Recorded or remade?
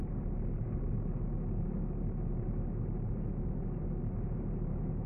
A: recorded